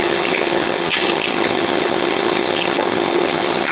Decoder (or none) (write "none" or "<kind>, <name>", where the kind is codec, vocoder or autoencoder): vocoder, HiFi-GAN